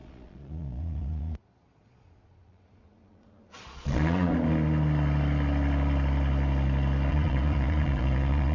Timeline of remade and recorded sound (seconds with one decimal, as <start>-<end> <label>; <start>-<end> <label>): 0.0-4.3 remade; 4.3-7.1 recorded; 7.1-8.5 remade

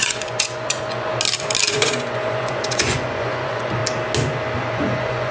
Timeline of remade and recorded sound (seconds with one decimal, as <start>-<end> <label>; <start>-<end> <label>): 0.0-1.1 remade; 1.1-1.7 recorded; 1.7-3.8 remade; 3.8-4.6 recorded; 4.6-5.3 remade

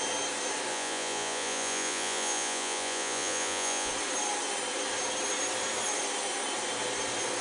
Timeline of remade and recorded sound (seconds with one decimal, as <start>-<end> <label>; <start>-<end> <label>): 0.0-0.7 recorded; 0.7-3.9 remade; 3.9-7.4 recorded

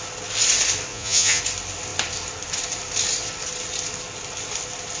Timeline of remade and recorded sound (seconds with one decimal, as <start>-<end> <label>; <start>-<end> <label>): 0.0-0.9 recorded; 0.9-1.4 remade; 1.4-5.0 recorded

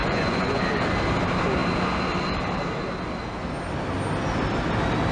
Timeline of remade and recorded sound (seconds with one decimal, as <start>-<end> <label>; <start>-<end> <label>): 0.0-0.6 remade; 0.6-5.1 recorded

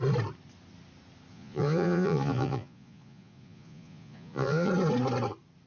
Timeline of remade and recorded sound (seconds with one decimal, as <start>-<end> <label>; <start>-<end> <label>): 0.0-1.3 recorded; 1.3-4.7 remade; 4.7-5.7 recorded

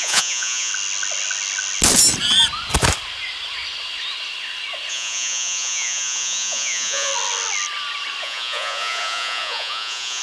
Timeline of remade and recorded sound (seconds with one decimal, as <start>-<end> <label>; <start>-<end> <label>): 0.0-0.7 remade; 0.7-4.9 recorded; 4.9-7.1 remade; 7.1-8.2 recorded; 8.2-10.2 remade

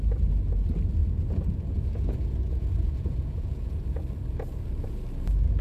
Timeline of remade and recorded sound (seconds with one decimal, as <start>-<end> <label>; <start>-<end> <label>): 0.0-1.0 recorded; 1.0-4.0 remade; 4.0-5.6 recorded